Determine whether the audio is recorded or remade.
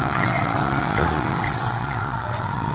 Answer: remade